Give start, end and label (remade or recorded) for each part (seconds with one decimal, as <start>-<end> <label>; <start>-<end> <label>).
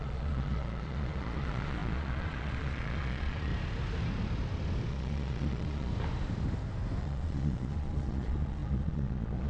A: 0.0-3.5 remade; 3.5-4.9 recorded; 4.9-5.9 remade; 5.9-7.0 recorded; 7.0-9.5 remade